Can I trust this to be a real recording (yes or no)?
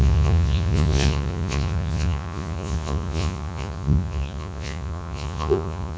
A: no